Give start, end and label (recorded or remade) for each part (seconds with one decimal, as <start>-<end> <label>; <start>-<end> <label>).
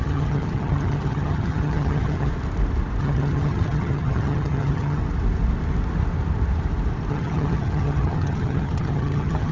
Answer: 0.0-2.3 remade; 2.3-3.0 recorded; 3.0-5.0 remade; 5.0-7.1 recorded; 7.1-9.5 remade